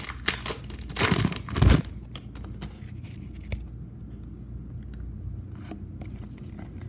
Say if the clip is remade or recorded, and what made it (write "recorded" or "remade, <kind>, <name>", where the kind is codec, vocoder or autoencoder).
recorded